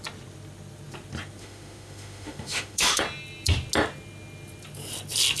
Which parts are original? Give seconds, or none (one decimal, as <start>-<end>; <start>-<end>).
0.0-1.4; 3.0-5.4